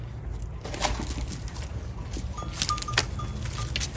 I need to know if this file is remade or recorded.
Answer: recorded